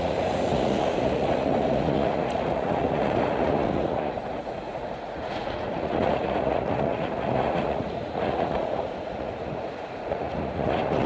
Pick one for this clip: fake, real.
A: fake